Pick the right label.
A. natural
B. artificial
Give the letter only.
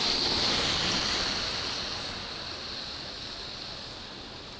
A